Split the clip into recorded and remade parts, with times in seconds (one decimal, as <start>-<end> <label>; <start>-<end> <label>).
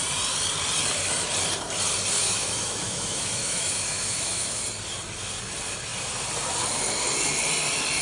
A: 0.0-2.2 recorded; 2.2-4.6 remade; 4.6-8.0 recorded